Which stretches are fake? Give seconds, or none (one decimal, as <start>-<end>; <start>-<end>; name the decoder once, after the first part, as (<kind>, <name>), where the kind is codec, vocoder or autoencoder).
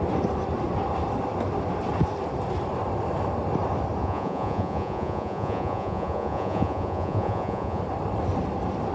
4.0-7.8 (vocoder, Vocos)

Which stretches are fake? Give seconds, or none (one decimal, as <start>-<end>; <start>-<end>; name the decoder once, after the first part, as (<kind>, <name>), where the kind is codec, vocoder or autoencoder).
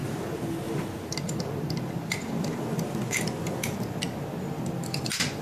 none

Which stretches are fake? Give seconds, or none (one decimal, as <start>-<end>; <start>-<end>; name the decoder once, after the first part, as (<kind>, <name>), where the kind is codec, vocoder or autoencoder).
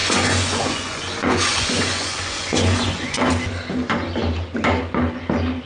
0.0-3.2 (vocoder, Vocos)